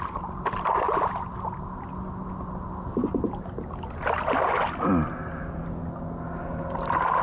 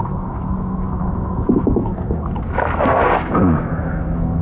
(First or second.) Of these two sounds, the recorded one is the first